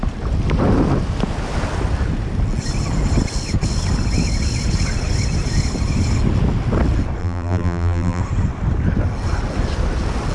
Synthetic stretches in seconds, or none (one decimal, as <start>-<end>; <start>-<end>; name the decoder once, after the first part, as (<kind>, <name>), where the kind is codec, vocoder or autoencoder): 7.2-8.2 (vocoder, BigVGAN v2)

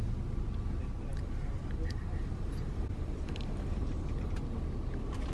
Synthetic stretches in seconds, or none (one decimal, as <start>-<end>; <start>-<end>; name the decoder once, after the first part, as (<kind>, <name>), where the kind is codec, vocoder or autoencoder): 1.1-4.3 (vocoder, BigVGAN v2)

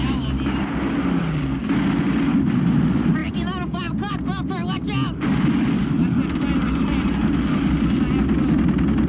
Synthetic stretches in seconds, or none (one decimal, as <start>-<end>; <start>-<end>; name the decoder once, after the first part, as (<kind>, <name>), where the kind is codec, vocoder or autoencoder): none

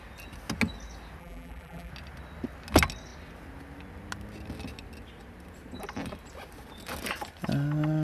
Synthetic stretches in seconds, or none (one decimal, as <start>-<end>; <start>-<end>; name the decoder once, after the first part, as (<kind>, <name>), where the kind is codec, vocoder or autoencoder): 1.2-1.9 (vocoder, BigVGAN v2)

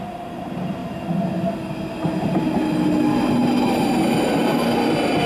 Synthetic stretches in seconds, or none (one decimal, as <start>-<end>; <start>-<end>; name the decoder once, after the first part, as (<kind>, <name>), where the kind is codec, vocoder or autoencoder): none